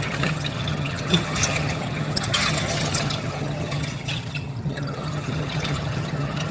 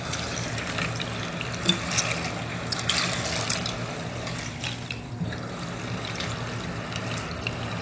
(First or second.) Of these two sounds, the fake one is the first